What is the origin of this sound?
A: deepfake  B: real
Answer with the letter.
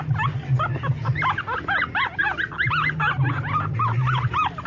B